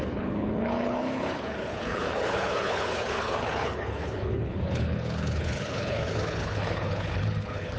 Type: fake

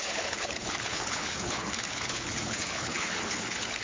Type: fake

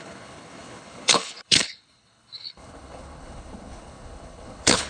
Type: fake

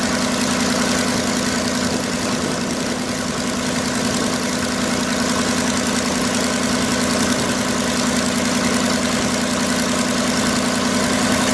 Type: real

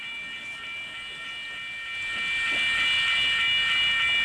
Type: real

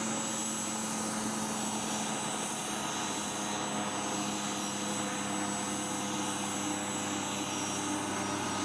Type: real